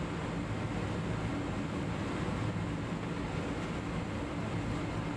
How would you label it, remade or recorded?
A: recorded